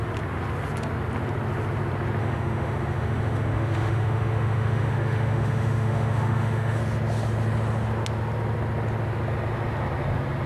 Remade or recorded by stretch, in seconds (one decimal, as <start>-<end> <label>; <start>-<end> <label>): 0.0-2.2 recorded; 2.2-6.8 remade; 6.8-10.5 recorded